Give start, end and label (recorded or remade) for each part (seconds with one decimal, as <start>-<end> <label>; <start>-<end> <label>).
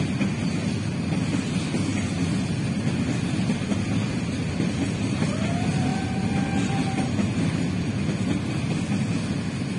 0.0-9.8 recorded